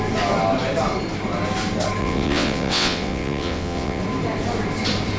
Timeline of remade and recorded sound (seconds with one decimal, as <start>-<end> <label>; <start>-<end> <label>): 0.0-2.0 recorded; 2.0-4.0 remade; 4.0-5.2 recorded

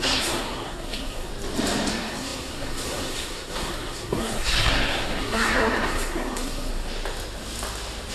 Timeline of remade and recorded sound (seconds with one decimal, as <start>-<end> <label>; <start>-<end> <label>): 0.0-1.3 remade; 1.3-1.9 recorded; 1.9-6.7 remade; 6.7-8.1 recorded

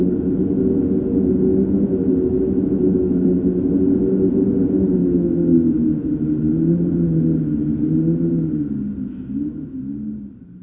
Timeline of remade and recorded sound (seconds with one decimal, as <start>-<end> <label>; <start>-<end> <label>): 0.0-1.5 recorded; 1.5-3.7 remade; 3.7-5.0 recorded; 5.0-6.1 remade; 6.1-10.6 recorded

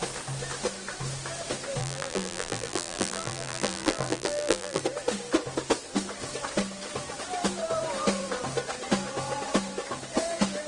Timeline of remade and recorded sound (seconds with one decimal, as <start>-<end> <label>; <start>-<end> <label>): 0.0-1.8 recorded; 1.8-4.8 remade; 4.8-10.7 recorded

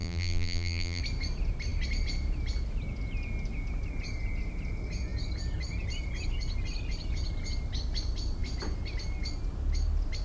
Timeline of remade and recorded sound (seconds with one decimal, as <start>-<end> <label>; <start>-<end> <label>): 0.0-1.0 remade; 1.0-10.2 recorded

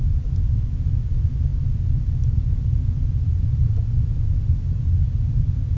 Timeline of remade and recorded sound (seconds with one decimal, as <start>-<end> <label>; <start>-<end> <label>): 0.0-5.8 recorded